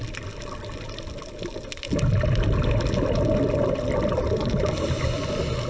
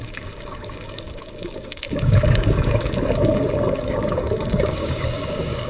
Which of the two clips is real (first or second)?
first